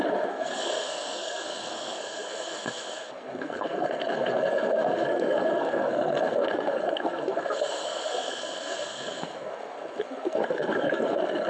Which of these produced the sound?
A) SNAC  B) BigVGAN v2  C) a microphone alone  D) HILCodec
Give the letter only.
A